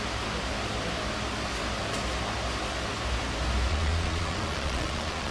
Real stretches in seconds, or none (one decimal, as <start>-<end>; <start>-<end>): 0.0-3.7